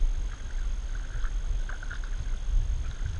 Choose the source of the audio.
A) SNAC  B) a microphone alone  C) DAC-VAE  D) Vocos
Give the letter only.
B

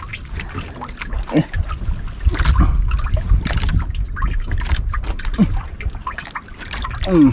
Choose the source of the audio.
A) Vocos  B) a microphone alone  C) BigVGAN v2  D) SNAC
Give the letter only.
B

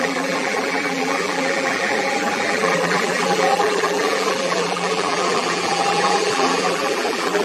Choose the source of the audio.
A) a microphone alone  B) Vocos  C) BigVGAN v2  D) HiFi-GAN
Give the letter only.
C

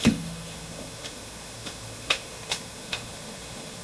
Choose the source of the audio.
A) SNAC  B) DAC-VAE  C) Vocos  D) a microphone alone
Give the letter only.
B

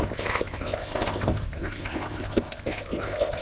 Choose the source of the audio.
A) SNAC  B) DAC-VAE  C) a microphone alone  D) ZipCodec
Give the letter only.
D